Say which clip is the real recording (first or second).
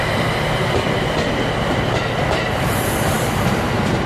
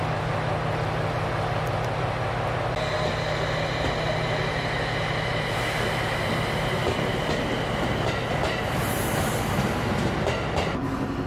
second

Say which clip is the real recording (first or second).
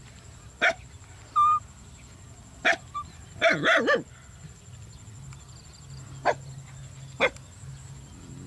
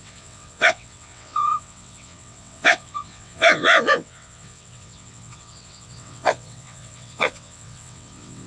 first